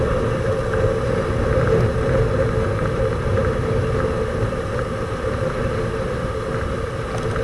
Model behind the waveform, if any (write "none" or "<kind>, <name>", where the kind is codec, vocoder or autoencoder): none